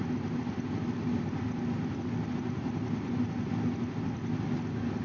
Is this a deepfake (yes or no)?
no